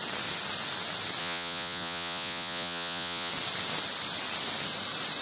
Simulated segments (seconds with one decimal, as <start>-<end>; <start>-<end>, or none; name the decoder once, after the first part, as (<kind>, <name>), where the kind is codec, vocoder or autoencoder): 1.2-3.3 (vocoder, Vocos)